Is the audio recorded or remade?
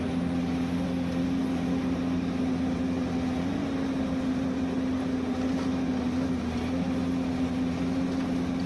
recorded